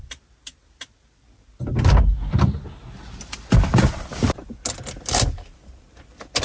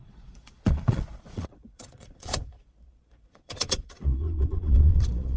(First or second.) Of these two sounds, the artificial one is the second